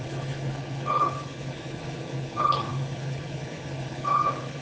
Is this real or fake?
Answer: fake